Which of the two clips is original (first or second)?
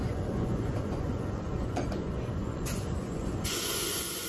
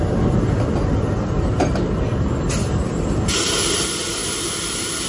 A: second